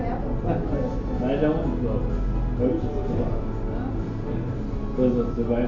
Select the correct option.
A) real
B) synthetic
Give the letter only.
A